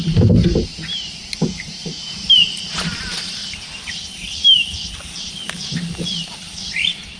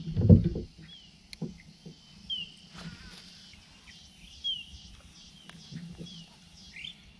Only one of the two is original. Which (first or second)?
second